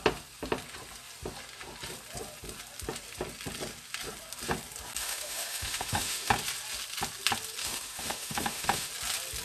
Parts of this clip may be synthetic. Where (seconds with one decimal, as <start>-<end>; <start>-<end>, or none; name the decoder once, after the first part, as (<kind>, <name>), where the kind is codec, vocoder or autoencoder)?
5.0-6.3 (autoencoder, DAC-VAE); 7.6-8.9